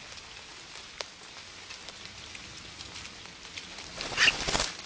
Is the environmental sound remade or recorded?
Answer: recorded